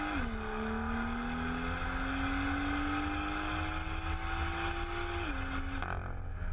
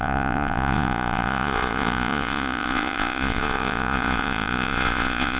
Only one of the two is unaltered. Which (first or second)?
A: first